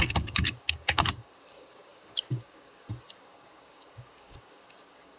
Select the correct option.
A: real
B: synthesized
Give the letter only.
B